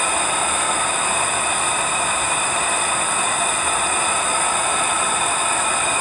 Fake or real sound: real